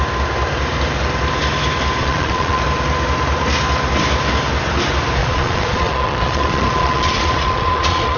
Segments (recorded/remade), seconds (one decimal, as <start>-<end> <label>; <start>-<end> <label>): 0.0-2.0 recorded; 2.0-2.6 remade; 2.6-5.2 recorded; 5.2-8.2 remade